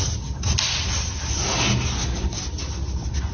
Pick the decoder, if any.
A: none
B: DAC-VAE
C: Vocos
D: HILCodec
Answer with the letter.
A